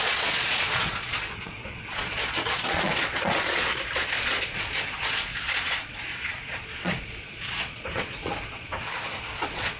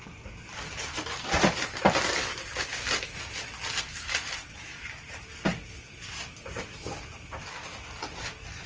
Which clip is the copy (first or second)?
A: first